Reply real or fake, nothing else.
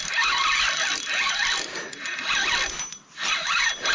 real